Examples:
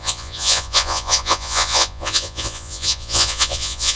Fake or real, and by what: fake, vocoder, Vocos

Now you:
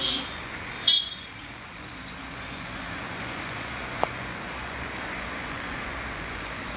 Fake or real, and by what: fake, vocoder, Vocos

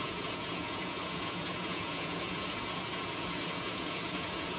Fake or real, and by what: fake, vocoder, Vocos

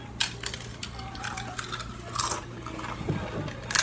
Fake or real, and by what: real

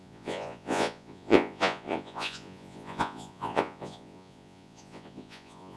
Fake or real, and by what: fake, vocoder, Vocos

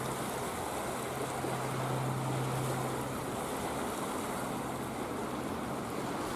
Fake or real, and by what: real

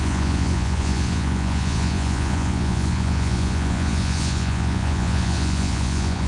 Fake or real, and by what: fake, vocoder, Vocos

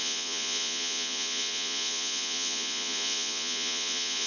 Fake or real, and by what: fake, vocoder, Vocos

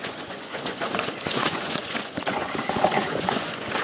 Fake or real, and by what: fake, vocoder, Vocos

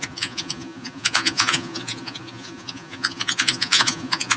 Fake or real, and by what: fake, vocoder, Vocos